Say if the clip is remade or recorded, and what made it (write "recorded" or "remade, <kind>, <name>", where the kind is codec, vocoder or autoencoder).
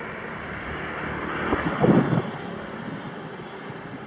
recorded